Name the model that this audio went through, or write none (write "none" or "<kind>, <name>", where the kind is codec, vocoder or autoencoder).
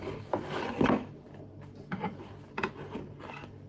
none